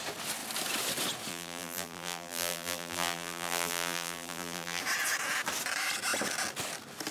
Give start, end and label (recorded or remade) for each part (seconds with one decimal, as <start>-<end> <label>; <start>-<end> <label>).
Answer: 0.0-1.3 recorded; 1.3-4.8 remade; 4.8-7.1 recorded